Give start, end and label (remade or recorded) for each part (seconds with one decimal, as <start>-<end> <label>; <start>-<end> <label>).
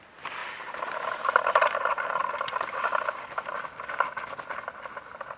0.0-0.4 recorded; 0.4-2.3 remade; 2.3-5.4 recorded